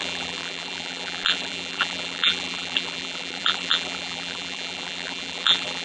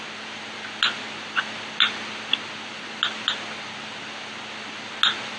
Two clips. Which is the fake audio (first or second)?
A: first